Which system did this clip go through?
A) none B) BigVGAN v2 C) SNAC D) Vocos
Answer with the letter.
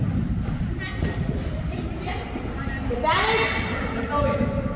A